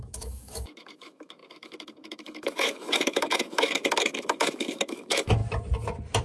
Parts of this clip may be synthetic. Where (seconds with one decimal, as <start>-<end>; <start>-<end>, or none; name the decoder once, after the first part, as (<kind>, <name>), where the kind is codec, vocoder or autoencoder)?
0.0-5.4 (autoencoder, DAC-VAE)